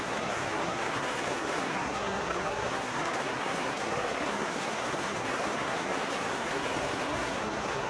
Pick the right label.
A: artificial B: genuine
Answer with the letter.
A